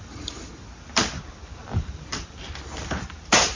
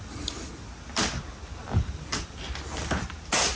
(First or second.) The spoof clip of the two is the first